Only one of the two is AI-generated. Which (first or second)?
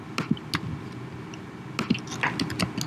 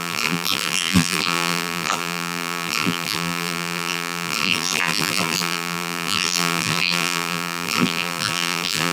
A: second